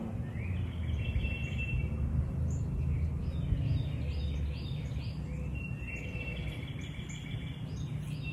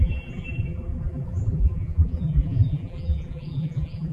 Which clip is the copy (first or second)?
second